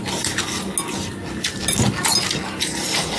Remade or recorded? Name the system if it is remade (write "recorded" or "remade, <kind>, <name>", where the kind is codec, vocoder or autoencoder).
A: recorded